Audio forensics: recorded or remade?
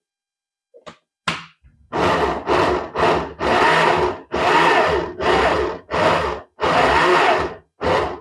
recorded